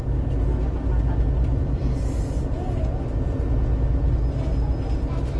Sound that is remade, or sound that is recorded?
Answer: recorded